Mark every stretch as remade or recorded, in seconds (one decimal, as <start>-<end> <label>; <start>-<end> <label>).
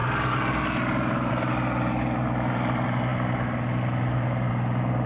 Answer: 0.0-5.1 recorded